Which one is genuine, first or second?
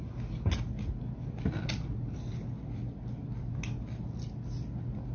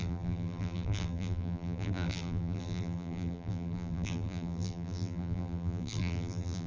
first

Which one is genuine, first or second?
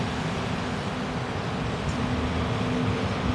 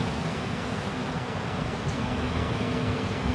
first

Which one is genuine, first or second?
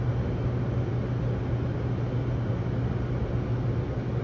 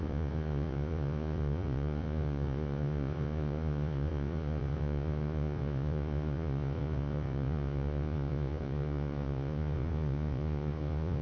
first